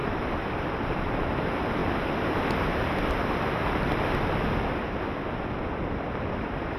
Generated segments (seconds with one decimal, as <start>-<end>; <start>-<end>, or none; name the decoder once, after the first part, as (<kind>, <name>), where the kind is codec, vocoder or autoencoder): 0.0-1.8 (vocoder, BigVGAN v2); 5.8-6.8